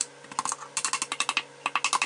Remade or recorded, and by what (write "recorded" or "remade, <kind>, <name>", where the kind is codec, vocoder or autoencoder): recorded